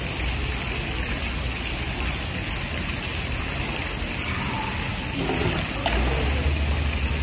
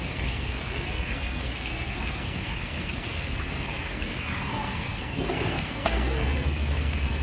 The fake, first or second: second